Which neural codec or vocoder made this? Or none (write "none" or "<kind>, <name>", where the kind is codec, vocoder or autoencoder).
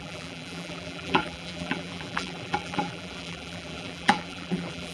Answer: vocoder, BigVGAN v2